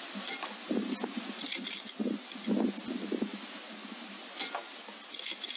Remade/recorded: recorded